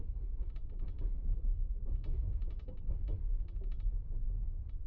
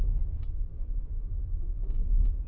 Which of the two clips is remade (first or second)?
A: first